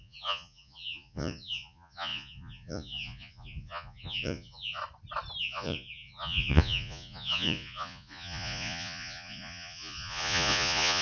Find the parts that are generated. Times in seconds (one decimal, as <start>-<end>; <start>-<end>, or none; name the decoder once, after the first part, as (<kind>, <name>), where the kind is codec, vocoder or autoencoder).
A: 0.0-4.8 (vocoder, Vocos); 5.4-11.0